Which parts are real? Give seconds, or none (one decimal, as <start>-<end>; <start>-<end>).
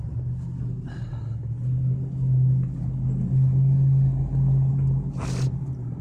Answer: 0.0-6.0